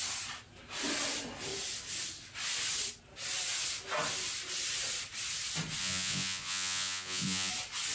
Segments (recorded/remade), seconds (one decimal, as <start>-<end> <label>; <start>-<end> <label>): 0.0-5.8 recorded; 5.8-7.5 remade; 7.5-7.9 recorded